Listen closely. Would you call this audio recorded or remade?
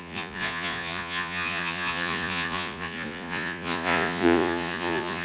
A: remade